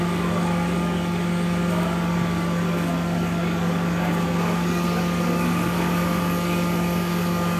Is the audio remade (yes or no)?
yes